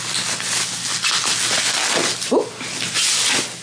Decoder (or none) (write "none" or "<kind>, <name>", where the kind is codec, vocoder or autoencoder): none